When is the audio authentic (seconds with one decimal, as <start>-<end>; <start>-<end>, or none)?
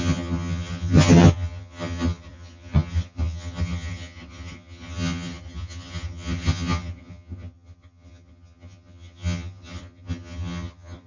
none